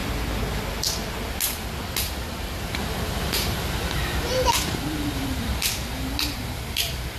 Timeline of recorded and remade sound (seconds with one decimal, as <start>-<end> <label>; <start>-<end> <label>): 0.0-2.4 recorded; 2.4-7.2 remade